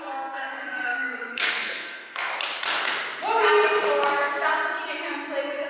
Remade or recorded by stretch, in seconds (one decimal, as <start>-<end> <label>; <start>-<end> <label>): 0.0-2.3 remade; 2.3-5.7 recorded